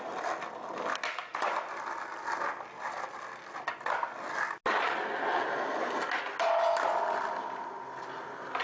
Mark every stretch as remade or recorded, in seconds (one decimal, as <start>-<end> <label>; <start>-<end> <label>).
0.0-8.6 recorded